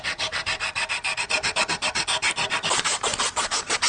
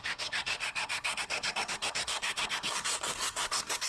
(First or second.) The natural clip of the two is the first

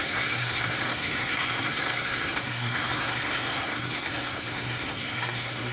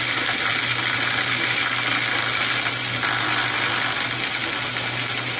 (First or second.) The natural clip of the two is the second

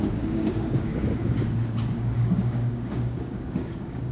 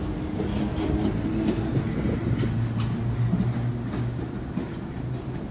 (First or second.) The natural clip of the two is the second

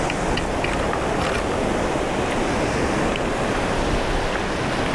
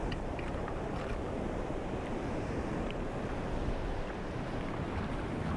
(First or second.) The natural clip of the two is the first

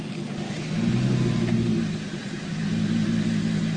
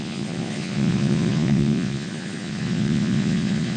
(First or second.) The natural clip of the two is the first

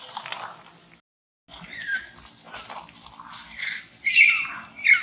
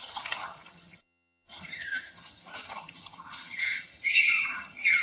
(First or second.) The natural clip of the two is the first